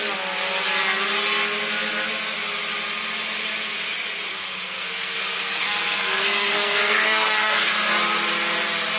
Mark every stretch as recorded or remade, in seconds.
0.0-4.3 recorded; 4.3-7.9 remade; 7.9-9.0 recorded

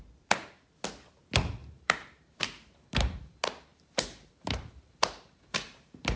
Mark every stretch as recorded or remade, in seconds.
0.0-1.6 recorded; 1.6-3.3 remade; 3.3-3.7 recorded; 3.7-6.2 remade

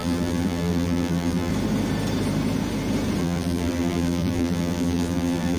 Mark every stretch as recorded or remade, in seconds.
0.0-1.5 remade; 1.5-3.2 recorded; 3.2-5.6 remade

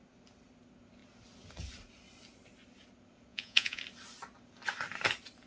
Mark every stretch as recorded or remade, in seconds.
0.0-3.3 recorded; 3.3-3.8 remade; 3.8-5.5 recorded

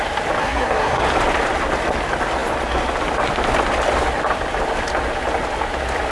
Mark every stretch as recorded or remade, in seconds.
0.0-0.4 recorded; 0.4-1.0 remade; 1.0-6.1 recorded

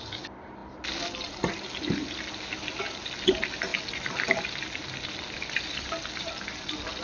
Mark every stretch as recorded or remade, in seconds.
0.0-7.0 recorded